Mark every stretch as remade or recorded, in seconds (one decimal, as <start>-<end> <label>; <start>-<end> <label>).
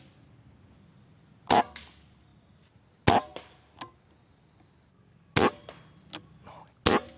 0.0-7.2 recorded